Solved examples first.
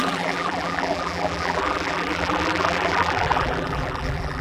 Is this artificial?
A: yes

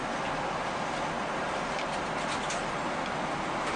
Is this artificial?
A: no